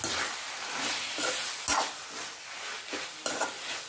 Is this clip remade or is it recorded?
recorded